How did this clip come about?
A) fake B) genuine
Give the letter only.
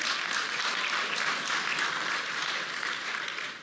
A